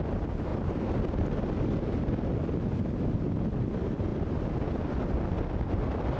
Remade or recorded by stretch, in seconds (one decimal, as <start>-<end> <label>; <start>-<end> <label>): 0.0-6.2 recorded